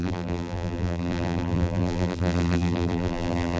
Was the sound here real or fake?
fake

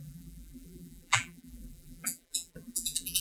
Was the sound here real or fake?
fake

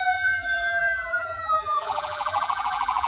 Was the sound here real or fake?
fake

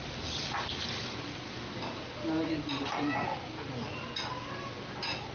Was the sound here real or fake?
real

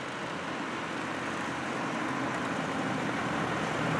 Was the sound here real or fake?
real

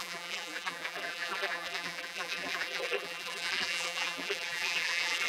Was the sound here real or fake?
fake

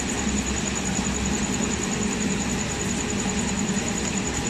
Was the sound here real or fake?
real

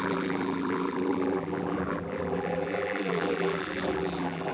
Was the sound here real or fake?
fake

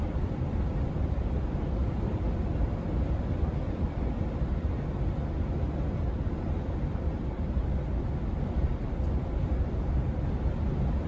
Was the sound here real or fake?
fake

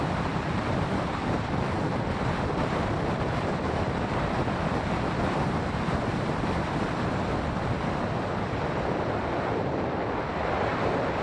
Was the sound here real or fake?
fake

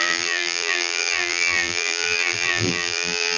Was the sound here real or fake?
fake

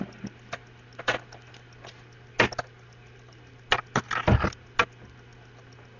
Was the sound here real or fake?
real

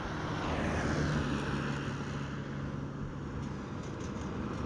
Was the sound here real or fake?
real